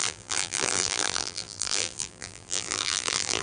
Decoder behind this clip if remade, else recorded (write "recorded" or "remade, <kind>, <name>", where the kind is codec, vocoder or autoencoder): remade, vocoder, BigVGAN v2